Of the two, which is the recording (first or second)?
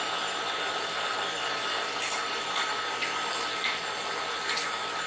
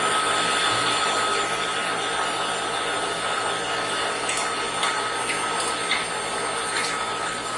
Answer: second